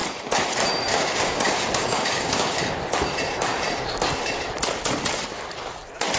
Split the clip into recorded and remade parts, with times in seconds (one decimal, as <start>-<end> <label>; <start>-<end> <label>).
0.0-0.9 recorded; 0.9-2.6 remade; 2.6-6.2 recorded